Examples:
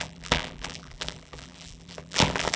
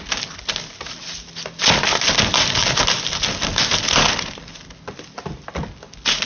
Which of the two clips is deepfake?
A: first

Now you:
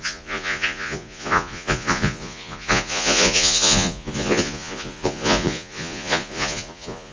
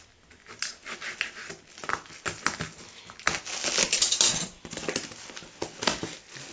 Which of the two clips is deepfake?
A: first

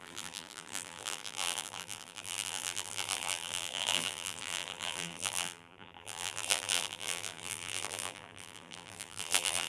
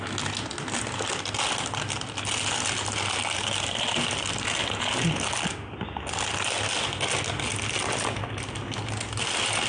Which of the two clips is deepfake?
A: first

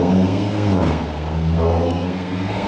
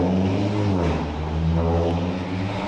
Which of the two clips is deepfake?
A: first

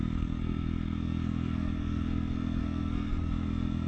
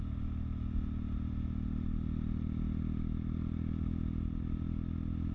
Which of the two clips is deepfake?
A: first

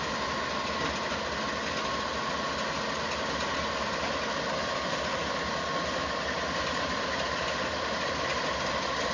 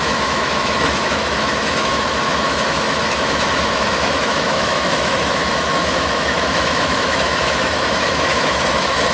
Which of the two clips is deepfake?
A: second